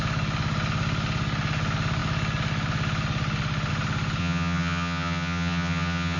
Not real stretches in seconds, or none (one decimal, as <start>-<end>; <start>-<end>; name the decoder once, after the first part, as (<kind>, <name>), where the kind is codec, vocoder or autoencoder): 4.2-6.2 (vocoder, HiFi-GAN)